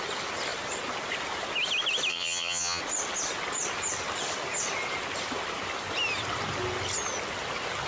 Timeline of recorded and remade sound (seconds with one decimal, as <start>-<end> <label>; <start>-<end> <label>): 0.0-2.1 recorded; 2.1-2.8 remade; 2.8-7.9 recorded